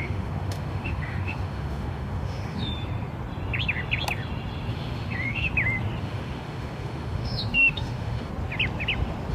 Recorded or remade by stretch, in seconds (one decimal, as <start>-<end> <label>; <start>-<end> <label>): 0.0-2.7 remade; 2.7-4.7 recorded; 4.7-5.5 remade; 5.5-6.0 recorded; 6.0-8.3 remade; 8.3-9.3 recorded